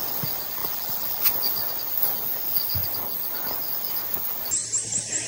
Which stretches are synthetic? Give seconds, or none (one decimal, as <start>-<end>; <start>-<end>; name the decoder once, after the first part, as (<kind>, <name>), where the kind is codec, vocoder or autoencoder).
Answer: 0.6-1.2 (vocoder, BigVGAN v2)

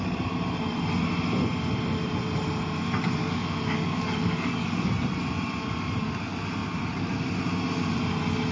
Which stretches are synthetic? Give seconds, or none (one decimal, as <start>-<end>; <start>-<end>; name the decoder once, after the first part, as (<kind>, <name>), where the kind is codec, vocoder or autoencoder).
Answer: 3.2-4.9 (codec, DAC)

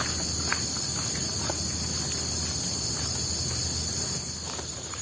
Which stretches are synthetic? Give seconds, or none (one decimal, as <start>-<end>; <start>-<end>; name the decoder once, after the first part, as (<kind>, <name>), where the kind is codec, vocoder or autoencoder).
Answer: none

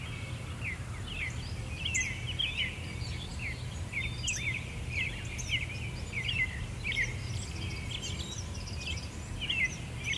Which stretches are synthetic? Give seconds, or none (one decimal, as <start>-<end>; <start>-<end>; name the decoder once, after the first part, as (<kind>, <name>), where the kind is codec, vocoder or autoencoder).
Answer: none

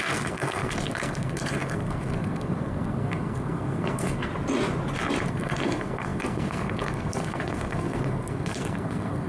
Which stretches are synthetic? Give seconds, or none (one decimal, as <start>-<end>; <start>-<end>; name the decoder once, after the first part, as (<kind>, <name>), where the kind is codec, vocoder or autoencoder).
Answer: 0.0-4.3 (codec, SNAC); 5.3-9.3

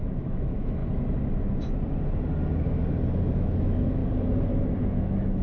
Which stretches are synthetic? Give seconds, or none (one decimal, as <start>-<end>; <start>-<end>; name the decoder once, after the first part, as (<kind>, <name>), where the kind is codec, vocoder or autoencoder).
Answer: 0.0-0.8 (autoencoder, DAC-VAE); 3.2-4.0; 4.8-5.4

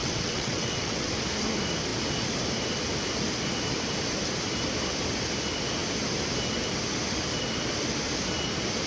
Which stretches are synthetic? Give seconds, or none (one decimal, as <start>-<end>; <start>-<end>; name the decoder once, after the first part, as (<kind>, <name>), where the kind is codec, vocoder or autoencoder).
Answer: 0.0-1.1 (vocoder, WaveNeXt)